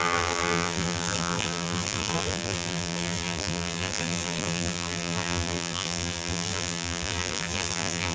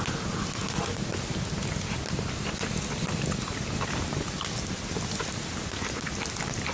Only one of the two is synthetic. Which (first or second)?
first